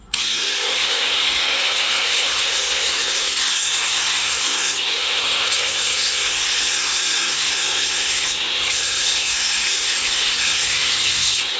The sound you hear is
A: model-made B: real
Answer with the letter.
A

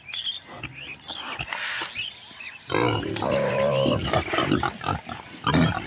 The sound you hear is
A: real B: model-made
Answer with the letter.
A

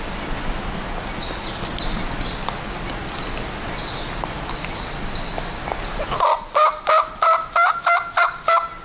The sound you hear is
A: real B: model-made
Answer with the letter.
A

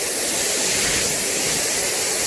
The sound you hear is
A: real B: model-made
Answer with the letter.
A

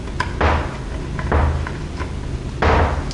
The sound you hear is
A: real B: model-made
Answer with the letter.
A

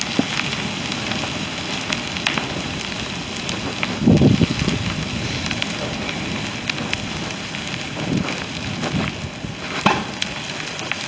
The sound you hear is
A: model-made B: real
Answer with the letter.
B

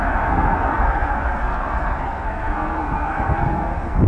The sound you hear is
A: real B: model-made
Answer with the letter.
B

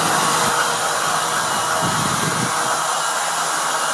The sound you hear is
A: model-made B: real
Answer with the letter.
B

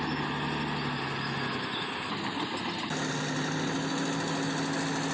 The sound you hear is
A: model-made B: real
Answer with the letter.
B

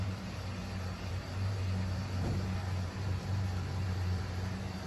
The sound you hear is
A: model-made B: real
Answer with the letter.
A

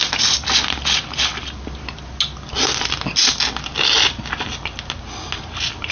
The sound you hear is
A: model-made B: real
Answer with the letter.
B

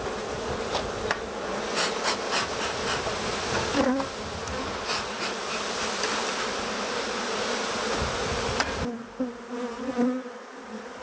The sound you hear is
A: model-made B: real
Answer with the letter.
B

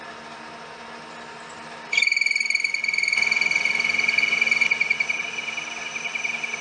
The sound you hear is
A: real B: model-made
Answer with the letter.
A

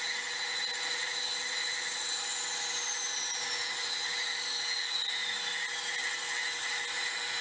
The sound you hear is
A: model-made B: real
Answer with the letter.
B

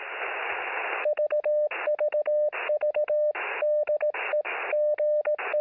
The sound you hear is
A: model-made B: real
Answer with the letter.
B